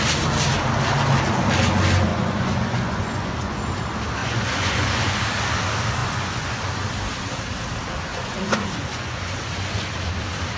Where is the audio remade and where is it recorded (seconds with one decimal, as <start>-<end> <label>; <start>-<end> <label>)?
0.0-2.1 recorded; 2.1-3.6 remade; 3.6-4.2 recorded; 4.2-5.2 remade; 5.2-6.0 recorded; 6.0-6.6 remade; 6.6-8.1 recorded; 8.1-9.9 remade; 9.9-10.6 recorded